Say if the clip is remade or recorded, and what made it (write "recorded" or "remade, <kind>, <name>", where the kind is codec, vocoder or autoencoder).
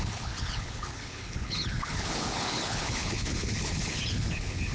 remade, codec, HILCodec